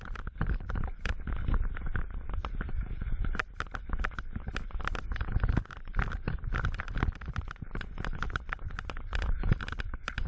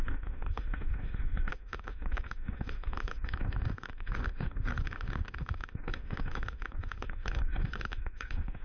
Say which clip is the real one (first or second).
first